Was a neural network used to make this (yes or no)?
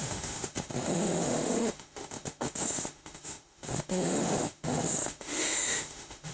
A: yes